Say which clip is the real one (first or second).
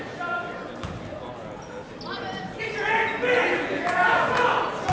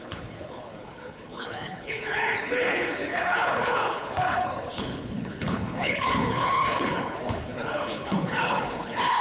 first